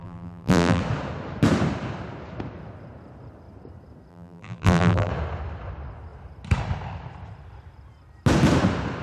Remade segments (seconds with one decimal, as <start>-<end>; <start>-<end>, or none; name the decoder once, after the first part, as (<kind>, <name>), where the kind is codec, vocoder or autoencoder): 0.0-0.8 (vocoder, BigVGAN v2); 4.1-5.1